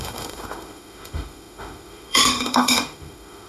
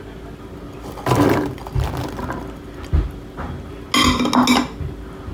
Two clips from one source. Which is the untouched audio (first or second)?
second